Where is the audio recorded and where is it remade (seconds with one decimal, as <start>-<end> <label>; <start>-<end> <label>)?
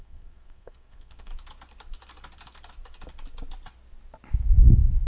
0.0-1.3 remade; 1.3-4.4 recorded; 4.4-5.1 remade